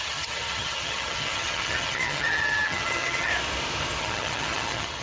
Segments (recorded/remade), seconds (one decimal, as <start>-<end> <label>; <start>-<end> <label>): 0.0-3.3 remade; 3.3-4.0 recorded; 4.0-5.0 remade